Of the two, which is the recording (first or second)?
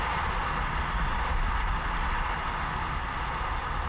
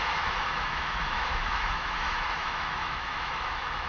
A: first